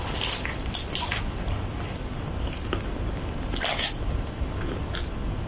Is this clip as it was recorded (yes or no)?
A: yes